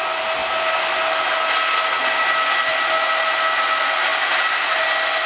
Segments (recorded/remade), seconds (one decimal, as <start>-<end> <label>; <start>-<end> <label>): 0.0-5.3 recorded